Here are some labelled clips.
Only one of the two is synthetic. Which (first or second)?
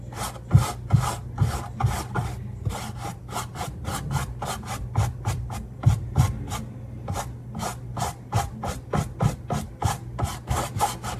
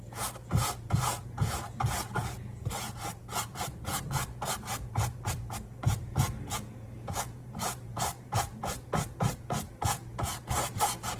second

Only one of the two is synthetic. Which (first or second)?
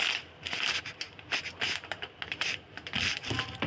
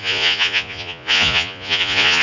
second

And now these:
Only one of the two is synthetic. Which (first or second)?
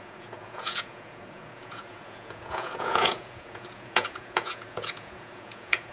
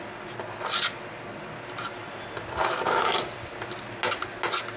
first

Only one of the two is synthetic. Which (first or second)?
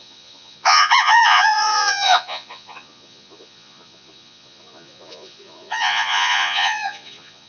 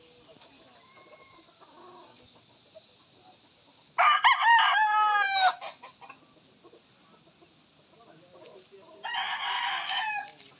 first